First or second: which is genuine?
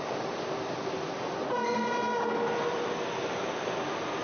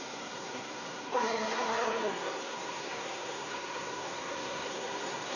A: first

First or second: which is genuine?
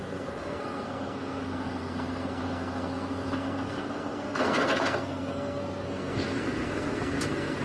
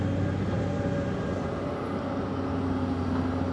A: second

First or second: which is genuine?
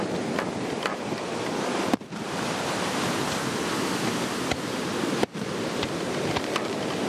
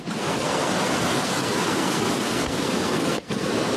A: first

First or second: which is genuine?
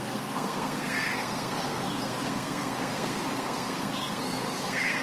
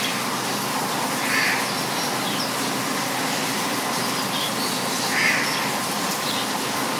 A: second